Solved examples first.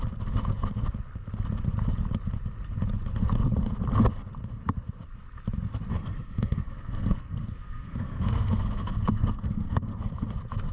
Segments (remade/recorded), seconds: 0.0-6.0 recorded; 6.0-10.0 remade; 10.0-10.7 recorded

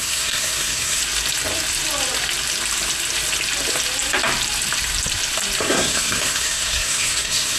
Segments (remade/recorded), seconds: 0.0-1.0 remade; 1.0-5.6 recorded; 5.6-7.6 remade

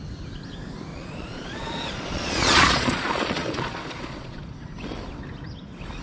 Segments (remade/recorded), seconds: 0.0-0.9 recorded; 0.9-4.4 remade; 4.4-6.0 recorded

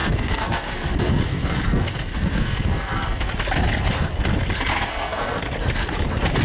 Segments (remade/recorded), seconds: 0.0-3.3 remade; 3.3-4.7 recorded; 4.7-5.4 remade; 5.4-6.4 recorded

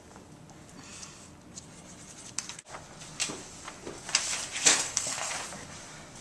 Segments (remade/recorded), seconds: 0.0-4.7 recorded; 4.7-5.3 remade; 5.3-6.2 recorded